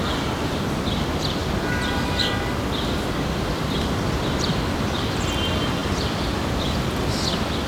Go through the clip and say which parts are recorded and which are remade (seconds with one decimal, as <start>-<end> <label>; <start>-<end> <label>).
0.0-1.4 remade; 1.4-3.5 recorded; 3.5-7.7 remade